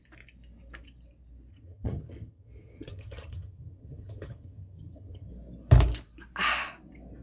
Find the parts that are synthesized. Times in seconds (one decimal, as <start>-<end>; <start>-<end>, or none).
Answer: 1.5-5.3